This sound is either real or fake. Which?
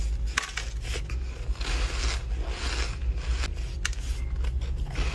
real